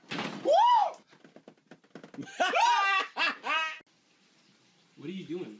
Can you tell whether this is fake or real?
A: real